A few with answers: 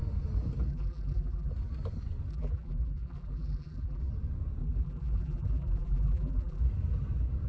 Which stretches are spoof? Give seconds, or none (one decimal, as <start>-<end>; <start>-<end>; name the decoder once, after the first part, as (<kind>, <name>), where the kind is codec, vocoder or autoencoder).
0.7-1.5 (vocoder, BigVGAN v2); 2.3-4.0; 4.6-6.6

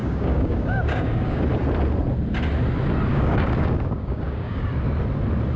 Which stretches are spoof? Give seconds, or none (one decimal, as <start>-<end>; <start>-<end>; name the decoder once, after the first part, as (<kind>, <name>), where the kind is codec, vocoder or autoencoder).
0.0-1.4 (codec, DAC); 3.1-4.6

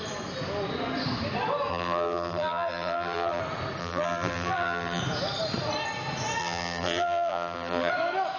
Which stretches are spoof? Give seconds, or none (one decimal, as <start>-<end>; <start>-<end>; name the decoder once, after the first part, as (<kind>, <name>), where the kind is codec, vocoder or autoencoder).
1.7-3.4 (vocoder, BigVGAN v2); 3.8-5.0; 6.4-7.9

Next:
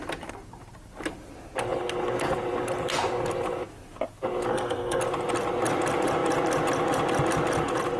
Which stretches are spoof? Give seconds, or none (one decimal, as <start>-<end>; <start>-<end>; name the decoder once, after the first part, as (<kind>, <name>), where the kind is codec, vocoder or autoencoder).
4.5-5.0 (codec, SNAC)

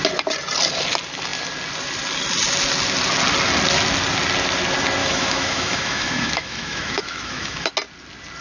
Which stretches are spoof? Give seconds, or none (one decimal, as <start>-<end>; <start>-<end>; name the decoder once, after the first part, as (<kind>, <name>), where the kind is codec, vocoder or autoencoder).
5.0-7.7 (autoencoder, DAC-VAE)